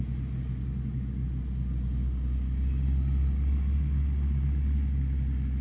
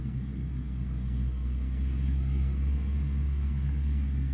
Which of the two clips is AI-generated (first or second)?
second